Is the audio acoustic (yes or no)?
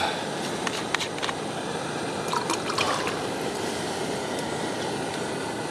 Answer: yes